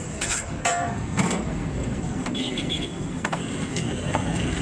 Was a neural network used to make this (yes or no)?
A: yes